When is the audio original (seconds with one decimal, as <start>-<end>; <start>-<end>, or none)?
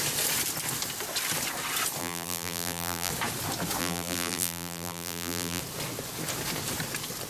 0.0-2.0; 3.1-3.8; 5.6-7.3